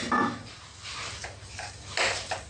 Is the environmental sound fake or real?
real